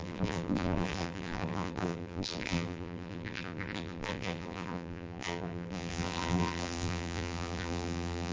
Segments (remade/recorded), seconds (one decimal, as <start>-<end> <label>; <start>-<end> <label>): 0.0-8.3 remade